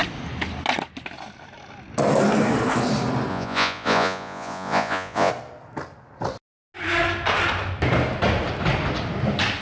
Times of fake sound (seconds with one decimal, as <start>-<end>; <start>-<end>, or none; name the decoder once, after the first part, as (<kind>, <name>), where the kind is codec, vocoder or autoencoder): 3.3-5.3 (vocoder, Vocos)